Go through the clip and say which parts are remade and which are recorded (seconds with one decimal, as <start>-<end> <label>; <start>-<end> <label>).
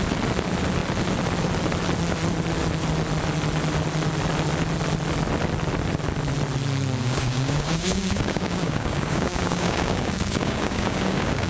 0.0-7.0 recorded; 7.0-11.5 remade